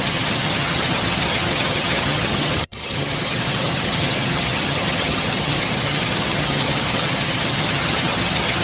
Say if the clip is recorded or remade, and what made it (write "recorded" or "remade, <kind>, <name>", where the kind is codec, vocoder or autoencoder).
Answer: remade, vocoder, HiFi-GAN